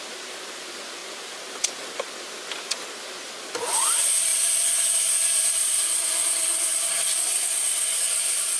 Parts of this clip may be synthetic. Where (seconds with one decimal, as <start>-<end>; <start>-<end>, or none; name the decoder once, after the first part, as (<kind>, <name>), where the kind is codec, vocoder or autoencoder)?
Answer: none